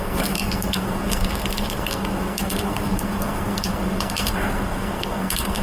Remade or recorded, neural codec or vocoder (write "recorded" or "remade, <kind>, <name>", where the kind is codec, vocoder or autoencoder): remade, codec, SNAC